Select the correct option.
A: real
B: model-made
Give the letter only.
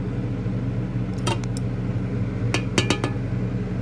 A